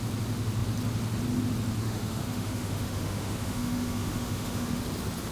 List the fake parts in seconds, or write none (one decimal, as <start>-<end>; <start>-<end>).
1.8-4.8

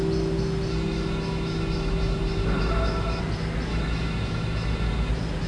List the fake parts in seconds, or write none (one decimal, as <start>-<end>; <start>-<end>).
0.7-3.2; 3.7-5.1

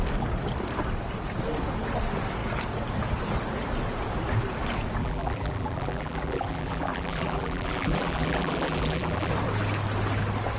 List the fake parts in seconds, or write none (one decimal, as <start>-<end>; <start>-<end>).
5.0-9.3

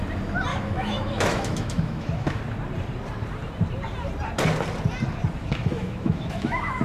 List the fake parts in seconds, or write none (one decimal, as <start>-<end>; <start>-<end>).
0.5-2.4; 5.4-6.8

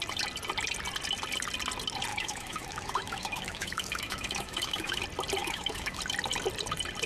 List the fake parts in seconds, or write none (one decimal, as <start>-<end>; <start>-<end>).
2.1-5.0; 5.4-6.0